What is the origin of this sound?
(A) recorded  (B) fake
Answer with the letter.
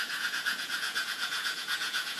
B